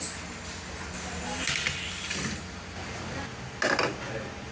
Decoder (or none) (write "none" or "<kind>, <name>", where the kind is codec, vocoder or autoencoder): none